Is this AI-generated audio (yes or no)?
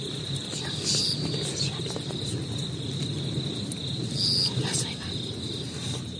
no